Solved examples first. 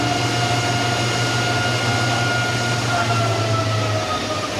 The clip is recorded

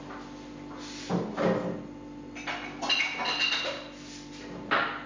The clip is recorded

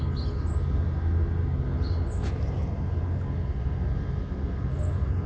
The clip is recorded